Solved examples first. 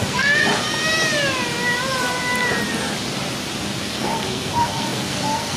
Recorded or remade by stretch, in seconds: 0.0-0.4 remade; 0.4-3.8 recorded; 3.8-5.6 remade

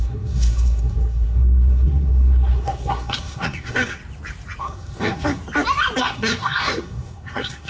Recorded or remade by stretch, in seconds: 0.0-4.0 remade; 4.0-4.6 recorded; 4.6-5.4 remade; 5.4-6.0 recorded; 6.0-7.7 remade

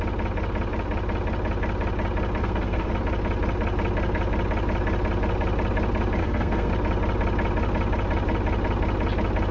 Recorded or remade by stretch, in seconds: 0.0-2.4 recorded; 2.4-2.9 remade; 2.9-6.2 recorded; 6.2-6.7 remade; 6.7-9.5 recorded

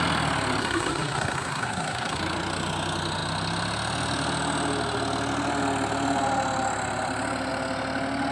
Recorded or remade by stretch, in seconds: 0.0-0.6 recorded; 0.6-2.2 remade; 2.2-8.3 recorded

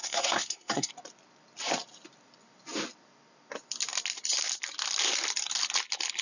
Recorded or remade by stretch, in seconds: 0.0-0.9 remade; 0.9-6.2 recorded

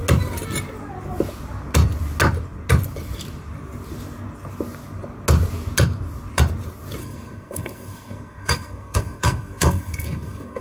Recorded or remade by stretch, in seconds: 0.0-7.0 recorded; 7.0-10.6 remade

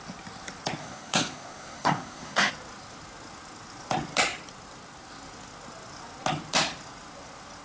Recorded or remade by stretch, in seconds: 0.0-0.8 recorded; 0.8-2.5 remade; 2.5-7.6 recorded

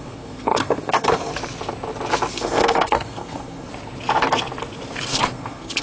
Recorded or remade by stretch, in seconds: 0.0-1.3 remade; 1.3-2.3 recorded; 2.3-3.7 remade; 3.7-5.1 recorded; 5.1-5.8 remade